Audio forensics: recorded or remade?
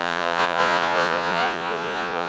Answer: remade